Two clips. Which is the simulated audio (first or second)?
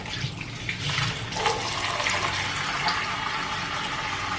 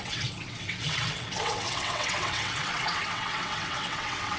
second